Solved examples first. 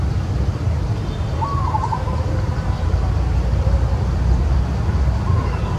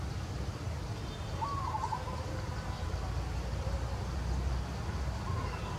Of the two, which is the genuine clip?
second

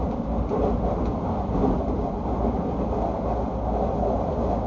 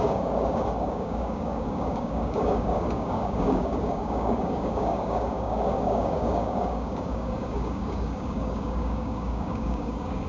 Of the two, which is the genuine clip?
first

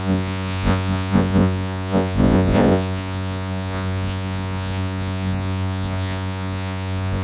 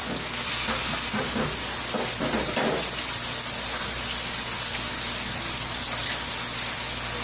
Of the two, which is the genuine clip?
second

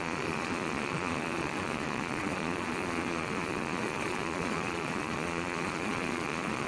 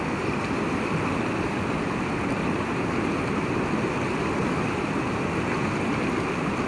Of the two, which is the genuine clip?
second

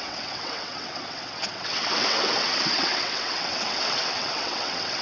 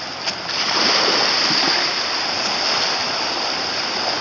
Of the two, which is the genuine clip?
second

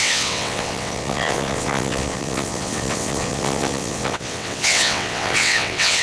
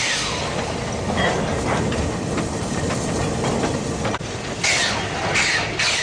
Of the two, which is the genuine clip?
second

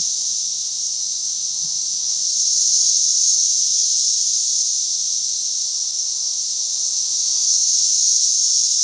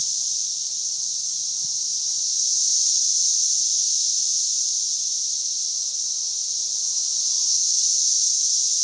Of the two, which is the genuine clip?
second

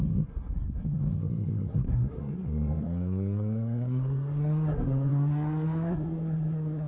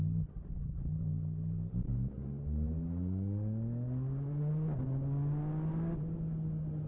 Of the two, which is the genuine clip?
second